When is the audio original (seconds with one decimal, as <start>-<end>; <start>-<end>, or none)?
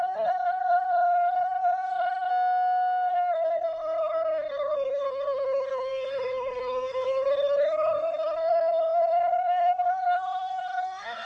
2.3-3.1